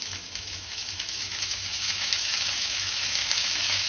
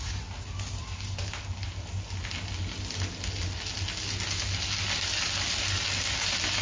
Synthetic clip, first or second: first